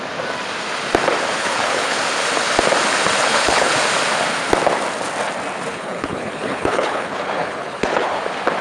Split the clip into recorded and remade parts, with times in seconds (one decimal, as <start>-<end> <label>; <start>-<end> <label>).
0.0-1.4 recorded; 1.4-2.0 remade; 2.0-3.2 recorded; 3.2-3.7 remade; 3.7-5.7 recorded; 5.7-8.2 remade; 8.2-8.6 recorded